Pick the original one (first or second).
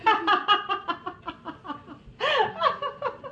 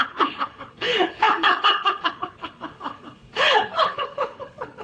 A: first